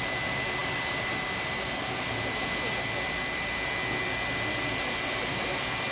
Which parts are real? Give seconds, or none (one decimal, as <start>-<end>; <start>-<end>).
0.0-5.9